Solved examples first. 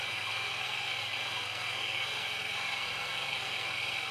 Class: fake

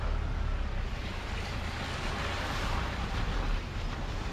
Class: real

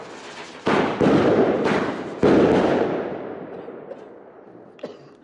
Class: real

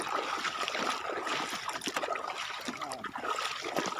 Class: real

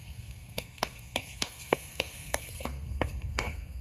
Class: fake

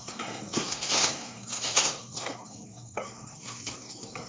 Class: fake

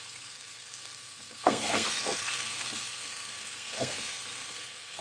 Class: fake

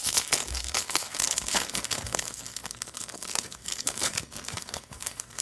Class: fake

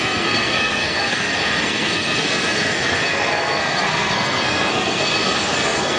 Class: fake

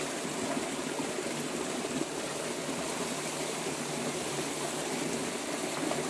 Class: real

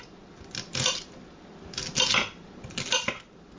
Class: real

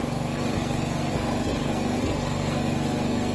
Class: fake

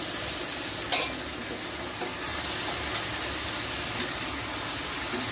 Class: real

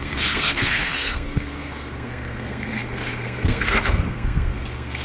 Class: fake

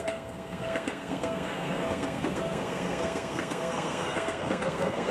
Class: fake